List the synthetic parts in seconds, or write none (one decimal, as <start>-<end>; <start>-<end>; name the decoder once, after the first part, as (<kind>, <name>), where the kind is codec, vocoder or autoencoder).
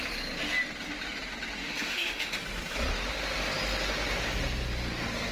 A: 1.6-2.4 (autoencoder, DAC-VAE)